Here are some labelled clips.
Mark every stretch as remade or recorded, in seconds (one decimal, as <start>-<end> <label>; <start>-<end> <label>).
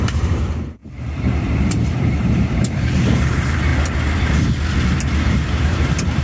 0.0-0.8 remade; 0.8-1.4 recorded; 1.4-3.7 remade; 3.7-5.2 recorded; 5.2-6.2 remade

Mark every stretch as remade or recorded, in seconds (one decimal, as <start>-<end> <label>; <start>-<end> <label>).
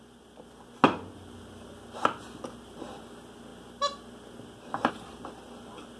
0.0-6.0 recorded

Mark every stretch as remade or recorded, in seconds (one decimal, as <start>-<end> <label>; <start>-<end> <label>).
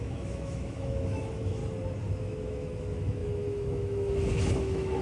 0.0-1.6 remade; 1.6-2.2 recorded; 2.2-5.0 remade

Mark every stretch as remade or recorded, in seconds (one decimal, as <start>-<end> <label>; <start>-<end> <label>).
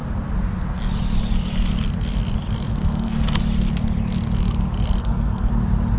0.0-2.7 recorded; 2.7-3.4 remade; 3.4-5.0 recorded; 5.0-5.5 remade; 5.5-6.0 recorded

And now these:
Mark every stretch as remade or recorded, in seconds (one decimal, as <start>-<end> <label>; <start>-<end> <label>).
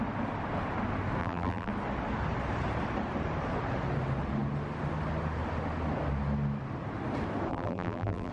0.0-1.2 recorded; 1.2-1.7 remade; 1.7-7.5 recorded; 7.5-8.3 remade